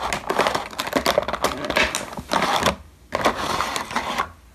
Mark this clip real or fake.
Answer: real